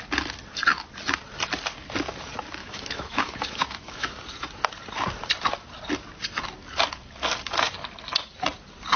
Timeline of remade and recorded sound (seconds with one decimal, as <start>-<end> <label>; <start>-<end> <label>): 0.0-2.6 recorded; 2.6-4.1 remade; 4.1-9.0 recorded